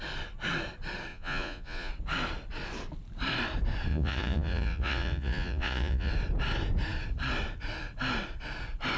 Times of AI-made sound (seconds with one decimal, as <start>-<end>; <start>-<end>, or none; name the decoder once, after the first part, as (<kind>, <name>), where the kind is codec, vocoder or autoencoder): 1.1-1.9 (vocoder, Vocos); 3.9-6.1